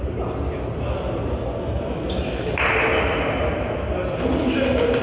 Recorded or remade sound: recorded